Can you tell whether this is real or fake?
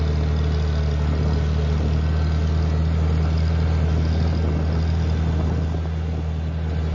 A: real